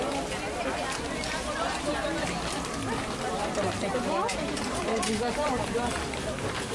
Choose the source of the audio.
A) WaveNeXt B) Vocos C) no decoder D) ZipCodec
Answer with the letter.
C